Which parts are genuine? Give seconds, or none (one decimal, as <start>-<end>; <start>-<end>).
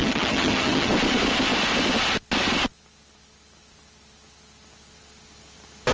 0.9-5.9